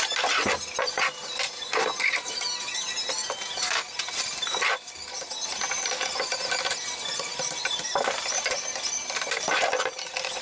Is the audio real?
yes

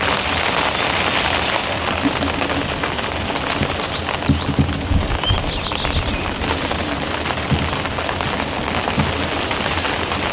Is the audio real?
yes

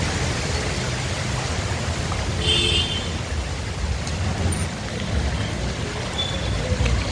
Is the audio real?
yes